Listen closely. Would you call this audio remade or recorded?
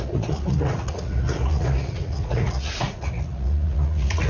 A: remade